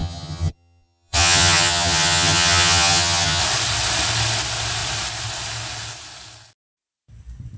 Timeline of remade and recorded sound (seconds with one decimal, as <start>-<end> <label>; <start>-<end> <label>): 0.0-3.4 remade; 3.4-7.6 recorded